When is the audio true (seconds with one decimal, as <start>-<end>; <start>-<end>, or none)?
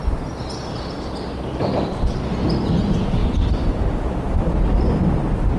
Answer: none